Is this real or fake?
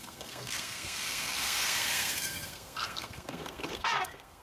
fake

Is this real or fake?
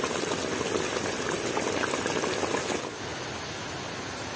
real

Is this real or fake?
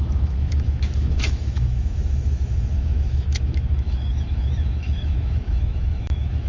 fake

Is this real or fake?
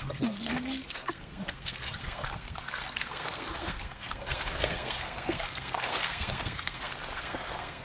fake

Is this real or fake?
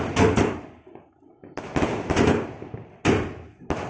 real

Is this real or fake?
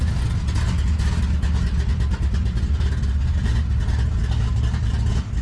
real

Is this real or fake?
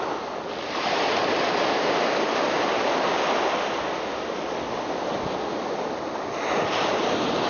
real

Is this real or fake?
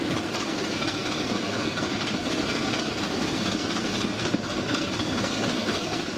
fake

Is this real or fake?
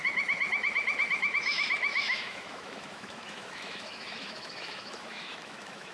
fake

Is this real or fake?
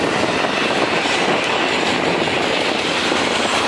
real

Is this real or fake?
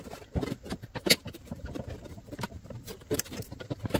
fake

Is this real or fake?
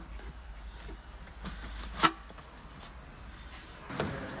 real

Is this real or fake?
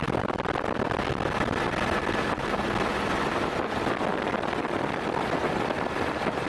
real